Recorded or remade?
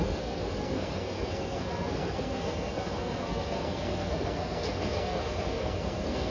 remade